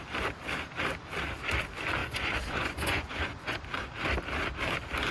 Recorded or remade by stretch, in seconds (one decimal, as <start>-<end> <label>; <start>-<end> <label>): 0.0-2.0 recorded; 2.0-3.6 remade; 3.6-5.1 recorded